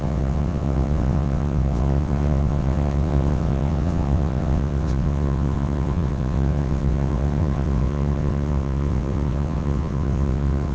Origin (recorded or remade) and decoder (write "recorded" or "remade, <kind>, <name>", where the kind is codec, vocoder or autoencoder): remade, vocoder, WaveNeXt